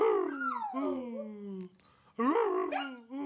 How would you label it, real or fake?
real